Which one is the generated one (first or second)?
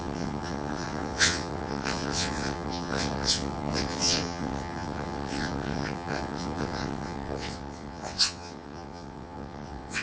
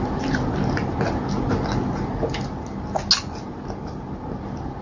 first